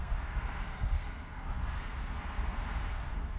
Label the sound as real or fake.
fake